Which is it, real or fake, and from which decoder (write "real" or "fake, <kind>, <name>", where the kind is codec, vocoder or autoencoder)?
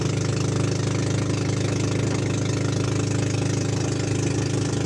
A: real